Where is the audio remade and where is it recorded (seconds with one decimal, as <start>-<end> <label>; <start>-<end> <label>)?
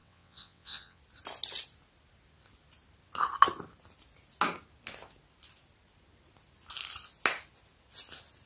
0.0-1.0 remade; 1.0-8.5 recorded